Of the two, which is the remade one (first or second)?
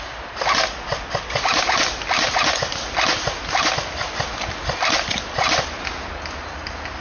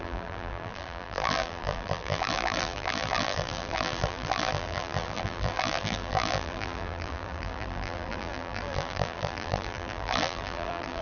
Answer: second